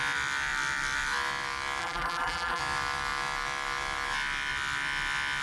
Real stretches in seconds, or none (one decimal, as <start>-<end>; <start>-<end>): 0.0-1.8; 2.6-5.4